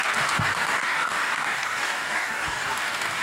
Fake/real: fake